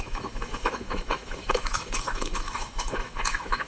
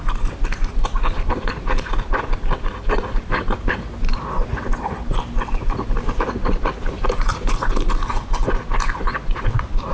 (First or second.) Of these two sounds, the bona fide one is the second